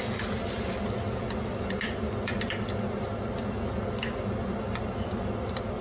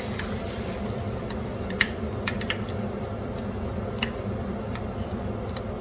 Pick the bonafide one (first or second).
first